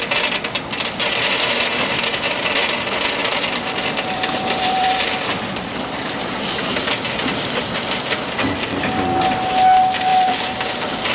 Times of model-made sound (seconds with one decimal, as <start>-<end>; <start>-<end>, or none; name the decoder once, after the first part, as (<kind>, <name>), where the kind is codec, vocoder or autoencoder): 3.2-5.1 (vocoder, BigVGAN v2); 10.1-11.1